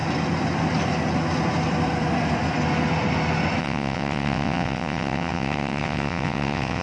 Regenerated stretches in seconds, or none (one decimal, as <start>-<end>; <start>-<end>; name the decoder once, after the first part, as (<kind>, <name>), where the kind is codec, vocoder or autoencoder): 3.6-6.8 (vocoder, WaveNeXt)